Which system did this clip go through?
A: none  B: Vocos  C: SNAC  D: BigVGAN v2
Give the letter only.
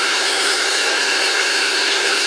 C